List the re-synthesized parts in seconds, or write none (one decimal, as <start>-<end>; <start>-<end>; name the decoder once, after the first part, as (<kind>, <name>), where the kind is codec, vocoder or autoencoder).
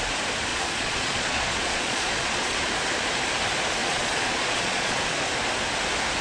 0.5-2.7 (vocoder, Vocos); 3.8-5.0